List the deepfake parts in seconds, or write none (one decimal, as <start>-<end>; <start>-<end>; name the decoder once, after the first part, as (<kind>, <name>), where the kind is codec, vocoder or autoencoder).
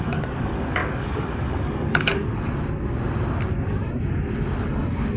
0.0-2.1 (codec, DAC)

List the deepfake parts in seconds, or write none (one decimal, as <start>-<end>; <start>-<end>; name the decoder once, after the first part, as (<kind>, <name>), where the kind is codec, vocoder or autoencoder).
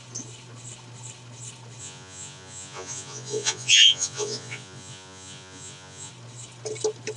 1.8-6.1 (vocoder, Vocos)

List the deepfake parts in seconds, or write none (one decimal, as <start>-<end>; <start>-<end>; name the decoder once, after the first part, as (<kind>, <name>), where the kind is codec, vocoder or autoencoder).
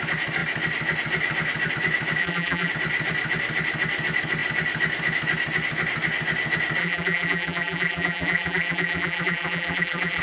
2.2-2.7 (vocoder, BigVGAN v2); 6.8-10.2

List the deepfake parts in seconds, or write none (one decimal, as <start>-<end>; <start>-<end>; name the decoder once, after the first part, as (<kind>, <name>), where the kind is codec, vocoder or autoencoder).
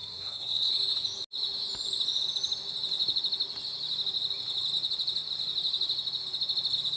0.0-0.7 (codec, SNAC)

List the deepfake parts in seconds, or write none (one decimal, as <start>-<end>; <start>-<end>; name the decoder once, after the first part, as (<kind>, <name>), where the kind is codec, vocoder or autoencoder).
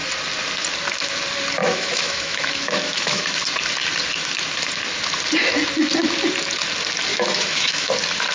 1.6-3.4 (autoencoder, DAC-VAE); 7.1-7.9